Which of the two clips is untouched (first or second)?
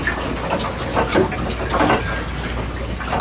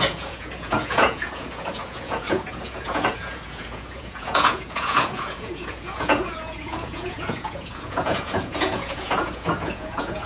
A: first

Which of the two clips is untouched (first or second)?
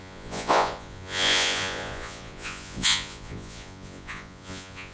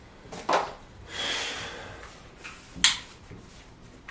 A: second